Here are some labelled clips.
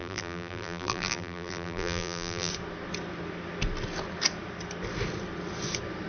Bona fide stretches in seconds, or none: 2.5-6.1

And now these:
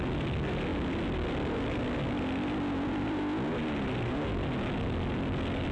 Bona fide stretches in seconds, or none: 0.0-5.7